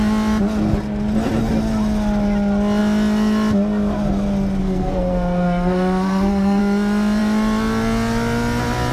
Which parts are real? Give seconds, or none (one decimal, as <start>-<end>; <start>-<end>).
0.0-4.6; 6.6-8.9